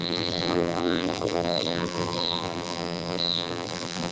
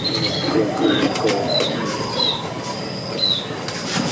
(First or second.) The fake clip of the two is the first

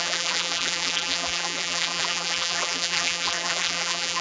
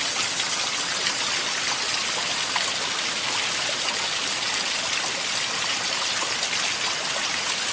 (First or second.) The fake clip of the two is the first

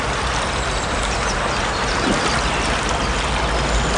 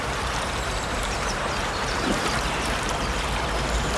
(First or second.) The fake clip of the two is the second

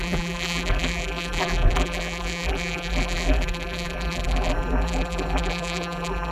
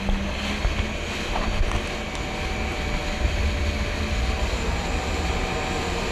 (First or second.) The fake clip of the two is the first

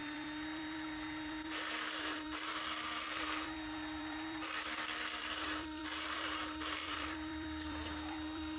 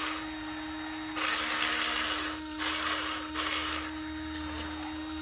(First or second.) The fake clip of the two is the first